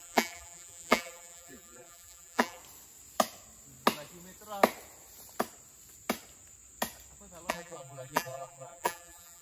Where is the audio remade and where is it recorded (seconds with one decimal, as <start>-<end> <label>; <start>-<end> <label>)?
0.0-2.6 remade; 2.6-7.5 recorded; 7.5-9.4 remade